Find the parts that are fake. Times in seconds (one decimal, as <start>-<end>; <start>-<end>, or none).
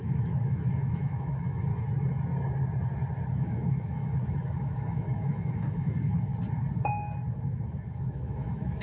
0.0-1.7; 3.3-6.3; 7.3-8.8